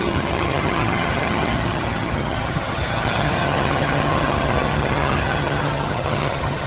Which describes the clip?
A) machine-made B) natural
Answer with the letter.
A